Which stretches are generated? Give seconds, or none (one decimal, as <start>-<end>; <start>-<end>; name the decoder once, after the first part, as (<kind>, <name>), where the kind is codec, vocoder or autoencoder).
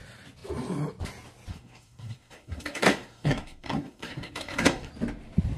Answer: 1.5-4.9 (codec, SNAC)